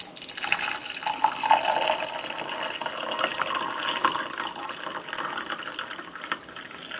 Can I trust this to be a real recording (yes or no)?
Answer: yes